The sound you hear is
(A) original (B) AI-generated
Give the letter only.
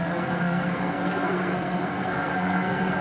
B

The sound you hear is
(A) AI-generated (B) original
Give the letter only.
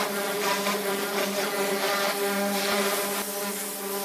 B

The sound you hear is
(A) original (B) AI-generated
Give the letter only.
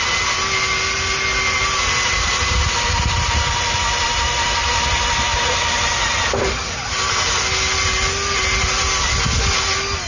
A